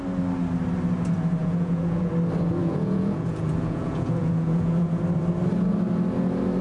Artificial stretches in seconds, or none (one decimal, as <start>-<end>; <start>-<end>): 1.4-2.1; 2.6-5.0